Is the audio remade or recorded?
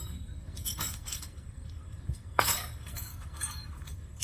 remade